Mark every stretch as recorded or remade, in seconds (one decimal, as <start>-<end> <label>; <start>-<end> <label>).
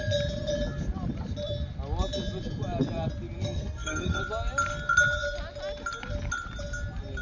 0.0-3.4 recorded; 3.4-4.2 remade; 4.2-7.2 recorded